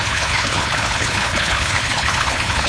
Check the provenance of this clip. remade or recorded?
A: remade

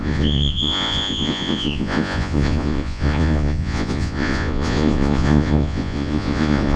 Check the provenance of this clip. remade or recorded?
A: remade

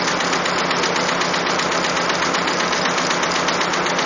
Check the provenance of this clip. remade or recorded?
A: recorded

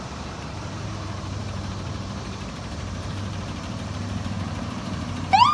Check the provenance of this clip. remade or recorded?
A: remade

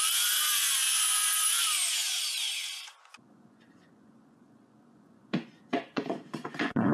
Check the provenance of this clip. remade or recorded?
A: remade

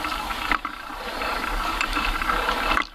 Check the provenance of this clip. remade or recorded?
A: recorded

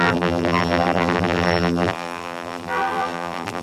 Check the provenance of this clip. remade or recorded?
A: remade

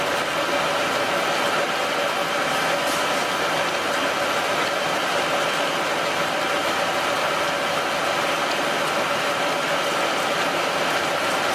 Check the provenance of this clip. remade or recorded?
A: recorded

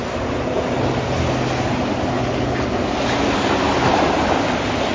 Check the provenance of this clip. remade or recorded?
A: recorded